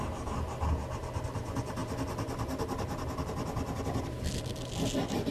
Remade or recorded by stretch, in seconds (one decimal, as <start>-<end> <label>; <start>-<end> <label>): 0.0-5.3 recorded